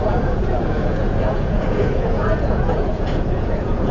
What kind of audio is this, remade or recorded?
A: remade